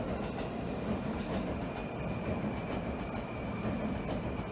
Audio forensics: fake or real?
real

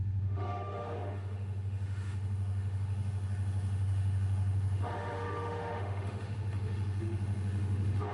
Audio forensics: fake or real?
fake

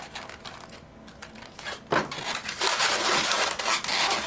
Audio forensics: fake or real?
real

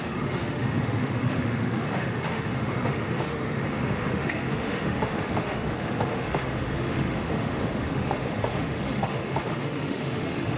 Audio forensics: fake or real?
fake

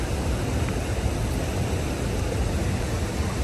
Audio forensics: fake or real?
real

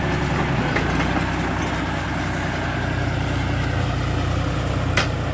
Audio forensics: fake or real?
real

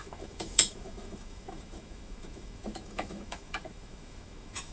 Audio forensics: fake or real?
fake